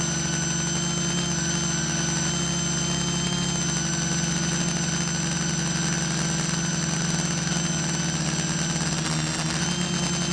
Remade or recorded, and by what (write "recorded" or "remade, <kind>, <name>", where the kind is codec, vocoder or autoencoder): recorded